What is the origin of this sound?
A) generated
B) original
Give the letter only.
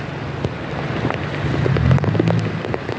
B